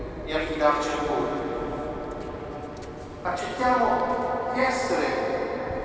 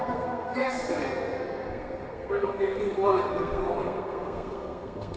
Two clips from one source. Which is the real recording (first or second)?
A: first